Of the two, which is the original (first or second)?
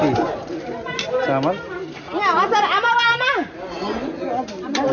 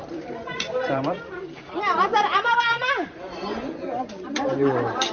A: first